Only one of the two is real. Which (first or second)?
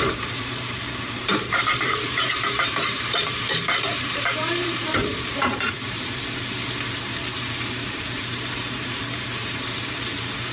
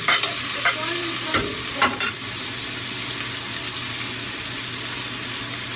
second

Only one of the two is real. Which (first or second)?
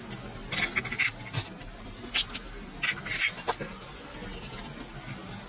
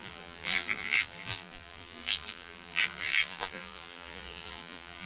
first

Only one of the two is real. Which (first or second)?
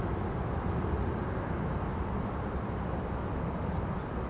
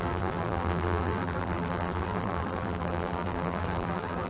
first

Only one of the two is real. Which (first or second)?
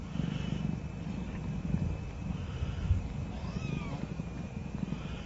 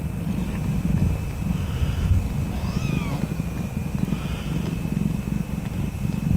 second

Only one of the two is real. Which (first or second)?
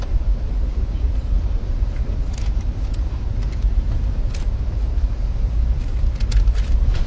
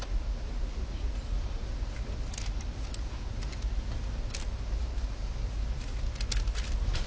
second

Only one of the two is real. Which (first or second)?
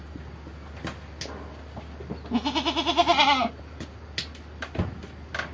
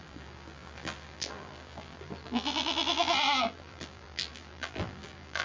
first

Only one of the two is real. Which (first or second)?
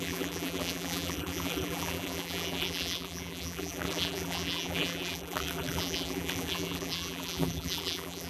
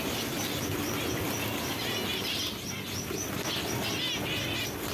second